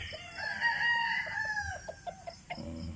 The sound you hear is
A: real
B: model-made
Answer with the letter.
A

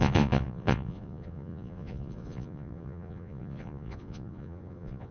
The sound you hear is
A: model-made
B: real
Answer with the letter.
A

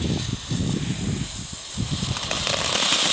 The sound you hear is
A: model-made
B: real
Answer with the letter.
B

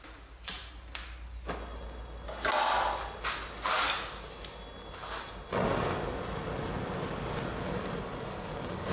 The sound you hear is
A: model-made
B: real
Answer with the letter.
B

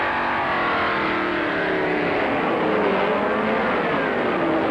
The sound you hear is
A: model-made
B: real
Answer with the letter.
B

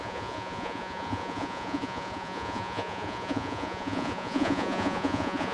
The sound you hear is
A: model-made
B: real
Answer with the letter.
A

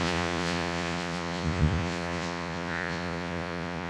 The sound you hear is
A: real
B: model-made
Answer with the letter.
B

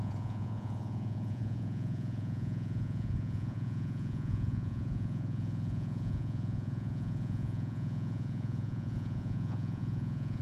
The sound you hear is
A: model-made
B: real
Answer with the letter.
A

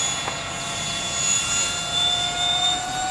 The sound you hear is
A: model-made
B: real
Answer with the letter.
A